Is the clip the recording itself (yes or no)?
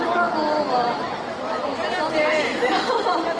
no